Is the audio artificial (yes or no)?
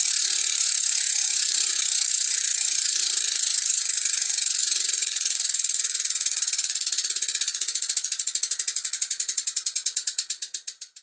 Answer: yes